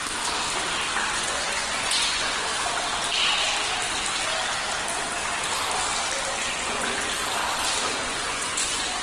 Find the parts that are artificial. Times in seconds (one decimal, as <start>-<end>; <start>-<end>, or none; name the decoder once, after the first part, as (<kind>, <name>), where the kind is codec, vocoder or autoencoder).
1.1-2.5 (vocoder, Vocos); 6.4-7.2; 7.9-9.0